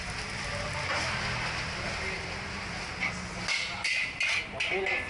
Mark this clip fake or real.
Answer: real